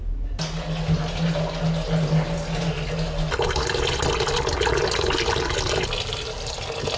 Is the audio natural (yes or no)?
yes